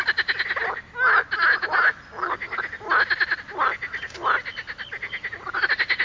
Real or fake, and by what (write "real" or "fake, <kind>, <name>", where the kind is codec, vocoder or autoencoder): real